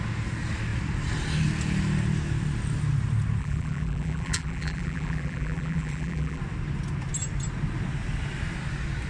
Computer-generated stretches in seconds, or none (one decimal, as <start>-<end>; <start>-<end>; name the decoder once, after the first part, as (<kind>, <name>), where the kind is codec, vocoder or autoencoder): 3.4-6.4 (vocoder, BigVGAN v2)